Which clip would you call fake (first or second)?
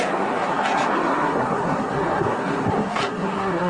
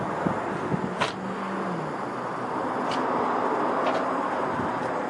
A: first